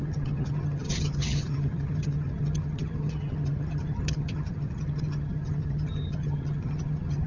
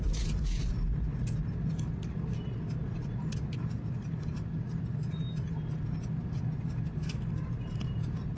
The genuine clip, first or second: second